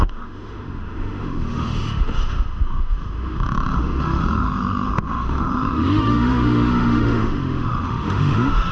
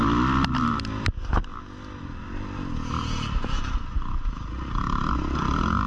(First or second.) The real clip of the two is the second